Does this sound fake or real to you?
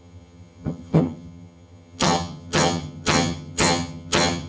fake